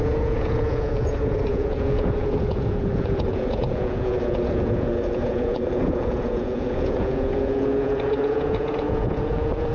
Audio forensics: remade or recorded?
remade